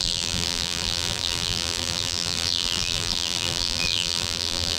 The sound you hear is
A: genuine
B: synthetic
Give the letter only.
B